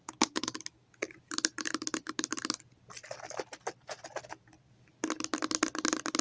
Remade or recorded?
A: recorded